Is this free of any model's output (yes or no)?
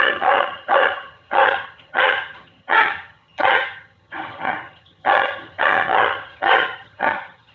no